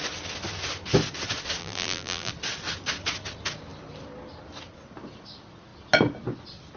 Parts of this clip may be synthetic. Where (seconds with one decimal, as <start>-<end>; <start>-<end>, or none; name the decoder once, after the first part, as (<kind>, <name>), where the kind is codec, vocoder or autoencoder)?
1.6-2.3 (vocoder, BigVGAN v2)